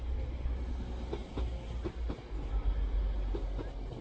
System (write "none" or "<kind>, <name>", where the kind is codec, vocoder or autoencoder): none